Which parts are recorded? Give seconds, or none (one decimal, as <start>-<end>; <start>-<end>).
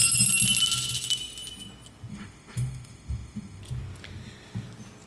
0.0-2.1; 3.6-5.1